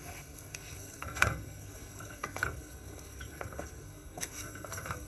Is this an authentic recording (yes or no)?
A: no